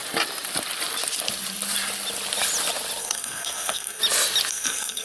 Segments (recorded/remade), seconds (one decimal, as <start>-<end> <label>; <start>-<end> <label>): 0.0-3.0 recorded; 3.0-4.0 remade; 4.0-4.5 recorded; 4.5-5.0 remade